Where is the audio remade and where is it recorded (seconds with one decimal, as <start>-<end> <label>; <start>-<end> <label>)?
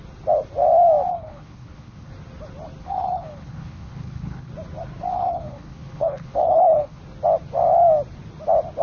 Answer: 0.0-1.1 recorded; 1.1-2.1 remade; 2.1-2.8 recorded; 2.8-4.5 remade; 4.5-5.1 recorded; 5.1-7.0 remade; 7.0-8.8 recorded